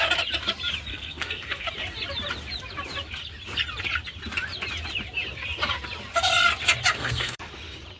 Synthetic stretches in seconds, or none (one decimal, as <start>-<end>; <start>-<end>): 0.9-1.7; 6.9-7.4